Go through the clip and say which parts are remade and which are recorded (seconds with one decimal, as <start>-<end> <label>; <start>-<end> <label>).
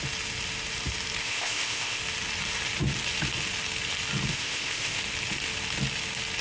0.0-1.2 recorded; 1.2-2.0 remade; 2.0-4.3 recorded; 4.3-5.0 remade; 5.0-6.4 recorded